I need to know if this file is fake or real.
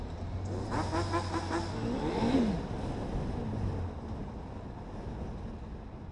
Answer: real